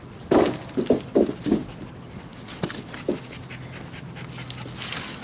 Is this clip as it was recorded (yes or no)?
yes